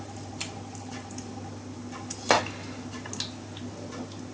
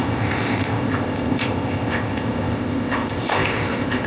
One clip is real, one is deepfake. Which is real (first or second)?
first